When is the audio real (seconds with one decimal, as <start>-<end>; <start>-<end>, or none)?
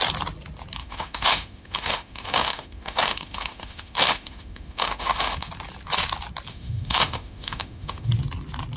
0.0-0.8; 5.5-6.5; 8.1-8.8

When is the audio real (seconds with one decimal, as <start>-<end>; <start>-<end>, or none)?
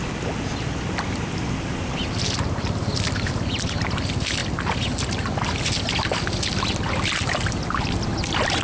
0.0-8.6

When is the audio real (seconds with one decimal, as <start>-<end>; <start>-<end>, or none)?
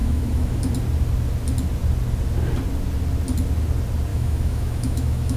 0.6-4.1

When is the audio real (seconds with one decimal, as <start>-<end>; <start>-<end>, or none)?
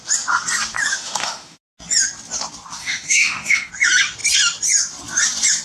0.0-0.9; 1.6-2.8; 3.7-5.6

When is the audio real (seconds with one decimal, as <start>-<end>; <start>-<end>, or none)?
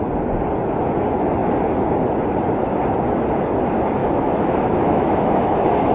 0.0-4.0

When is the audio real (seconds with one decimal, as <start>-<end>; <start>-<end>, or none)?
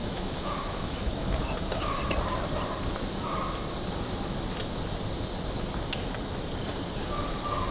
1.1-7.7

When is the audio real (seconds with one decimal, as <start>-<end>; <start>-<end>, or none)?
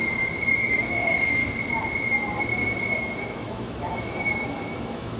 0.0-0.7; 1.4-3.0